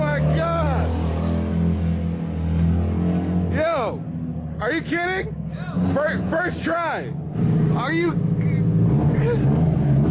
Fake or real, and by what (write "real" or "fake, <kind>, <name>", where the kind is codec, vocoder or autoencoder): real